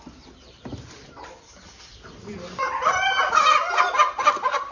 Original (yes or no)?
yes